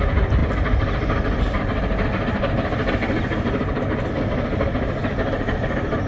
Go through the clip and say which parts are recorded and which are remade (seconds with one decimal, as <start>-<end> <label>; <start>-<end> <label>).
0.0-6.1 recorded